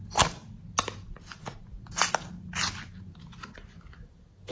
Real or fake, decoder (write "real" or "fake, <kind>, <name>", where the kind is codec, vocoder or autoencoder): real